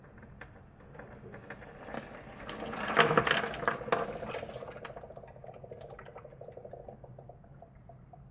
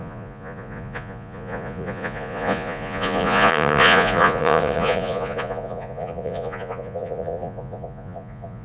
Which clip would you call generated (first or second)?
second